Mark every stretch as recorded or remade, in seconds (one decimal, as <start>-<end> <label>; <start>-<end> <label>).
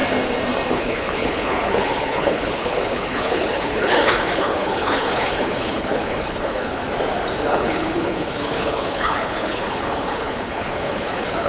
0.0-0.7 recorded; 0.7-6.8 remade; 6.8-7.5 recorded; 7.5-11.5 remade